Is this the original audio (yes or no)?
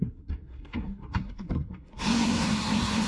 no